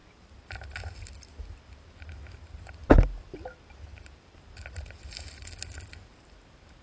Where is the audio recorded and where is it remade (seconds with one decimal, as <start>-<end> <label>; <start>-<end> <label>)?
0.0-6.8 recorded